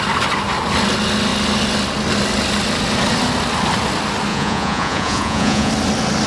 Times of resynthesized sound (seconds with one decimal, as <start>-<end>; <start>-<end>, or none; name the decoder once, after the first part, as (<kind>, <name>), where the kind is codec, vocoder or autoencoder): 4.3-5.7 (vocoder, Vocos)